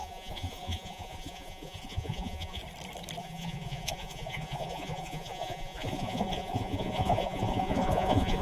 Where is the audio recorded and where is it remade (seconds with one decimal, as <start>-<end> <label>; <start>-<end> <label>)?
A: 0.0-2.6 remade; 2.6-3.2 recorded; 3.2-8.4 remade